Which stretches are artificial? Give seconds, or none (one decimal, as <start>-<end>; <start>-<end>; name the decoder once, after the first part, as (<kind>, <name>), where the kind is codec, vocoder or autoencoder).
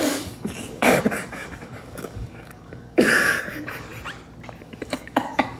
0.0-3.9 (codec, DAC); 4.6-5.6